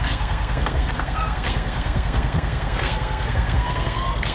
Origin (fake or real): fake